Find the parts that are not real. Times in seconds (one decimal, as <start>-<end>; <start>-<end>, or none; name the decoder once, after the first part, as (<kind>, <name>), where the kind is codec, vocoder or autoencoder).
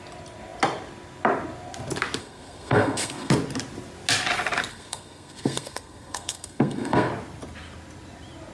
2.2-3.3 (codec, SNAC); 4.7-7.1